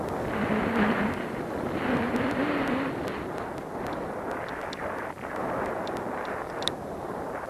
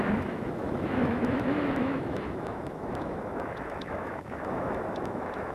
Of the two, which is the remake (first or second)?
second